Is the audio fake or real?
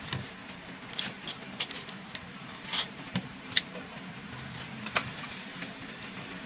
fake